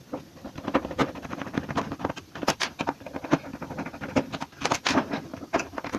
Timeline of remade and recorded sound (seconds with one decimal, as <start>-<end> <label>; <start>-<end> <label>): 0.0-1.0 recorded; 1.0-1.7 remade; 1.7-6.0 recorded